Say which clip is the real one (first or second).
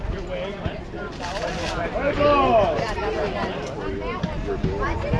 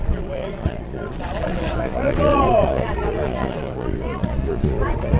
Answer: first